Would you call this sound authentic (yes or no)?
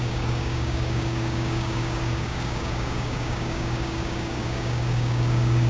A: no